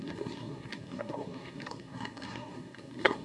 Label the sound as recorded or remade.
remade